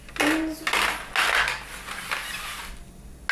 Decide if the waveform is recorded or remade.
recorded